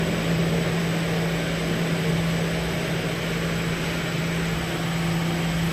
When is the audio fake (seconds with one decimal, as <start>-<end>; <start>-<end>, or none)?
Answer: none